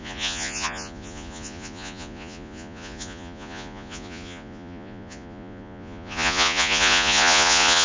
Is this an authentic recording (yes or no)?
no